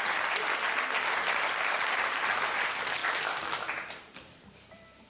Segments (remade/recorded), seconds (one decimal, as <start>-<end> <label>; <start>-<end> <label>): 0.0-3.0 remade; 3.0-4.0 recorded; 4.0-5.1 remade